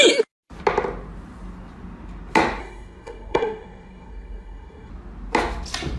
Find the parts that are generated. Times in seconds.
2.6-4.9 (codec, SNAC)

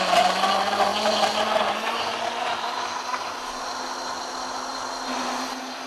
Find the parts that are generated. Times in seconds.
none

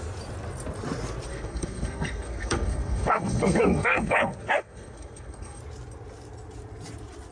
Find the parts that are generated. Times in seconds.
1.3-5.6 (codec, SNAC)

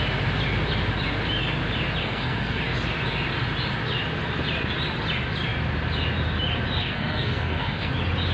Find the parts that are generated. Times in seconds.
2.0-2.6 (codec, SNAC); 6.8-7.9

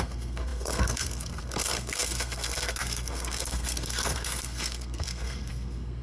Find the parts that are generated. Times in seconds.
0.0-6.0 (codec, SNAC)

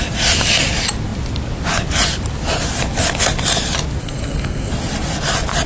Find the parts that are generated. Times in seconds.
4.0-4.7 (codec, SNAC)

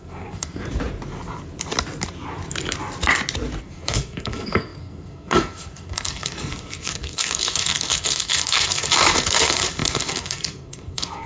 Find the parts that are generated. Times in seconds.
0.0-0.6 (codec, SNAC); 3.6-11.3

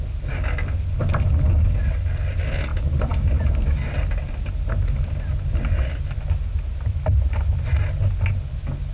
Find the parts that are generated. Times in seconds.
none